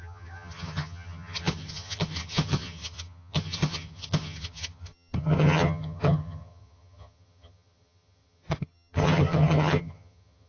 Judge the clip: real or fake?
fake